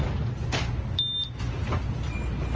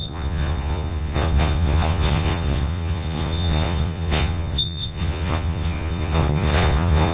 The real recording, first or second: first